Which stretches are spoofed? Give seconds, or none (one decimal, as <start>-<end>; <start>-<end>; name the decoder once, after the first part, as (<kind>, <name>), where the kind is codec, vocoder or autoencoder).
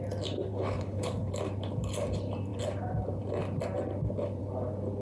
0.5-1.3 (codec, HILCodec)